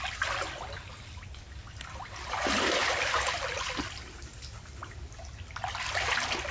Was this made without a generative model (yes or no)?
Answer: yes